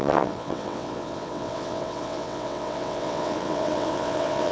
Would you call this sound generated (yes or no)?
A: yes